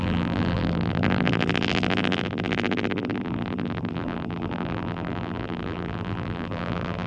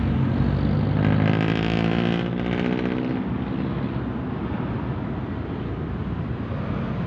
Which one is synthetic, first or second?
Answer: first